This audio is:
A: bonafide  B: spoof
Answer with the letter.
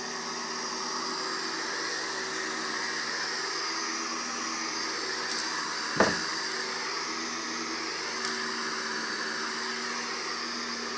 A